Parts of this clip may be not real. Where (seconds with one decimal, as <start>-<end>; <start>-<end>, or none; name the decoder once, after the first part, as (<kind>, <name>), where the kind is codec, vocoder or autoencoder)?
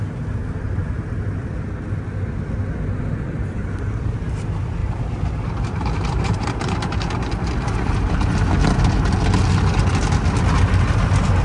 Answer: 0.8-1.5 (vocoder, BigVGAN v2); 4.8-7.0